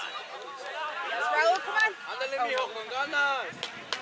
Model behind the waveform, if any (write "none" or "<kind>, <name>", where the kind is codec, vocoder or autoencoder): none